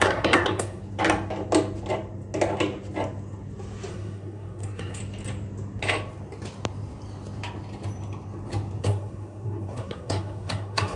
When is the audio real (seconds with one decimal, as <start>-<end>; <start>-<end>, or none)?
0.8-3.9; 5.0-8.8